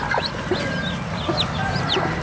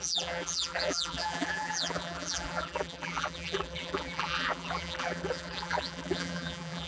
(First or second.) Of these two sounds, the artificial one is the second